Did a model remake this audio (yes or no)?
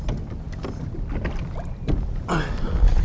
no